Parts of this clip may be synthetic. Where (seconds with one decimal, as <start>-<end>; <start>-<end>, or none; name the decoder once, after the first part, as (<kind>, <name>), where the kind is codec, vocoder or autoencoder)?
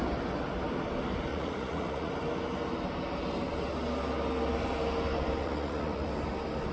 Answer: 1.3-2.1 (vocoder, Vocos); 5.4-6.1